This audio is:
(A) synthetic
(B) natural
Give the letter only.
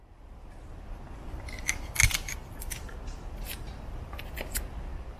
B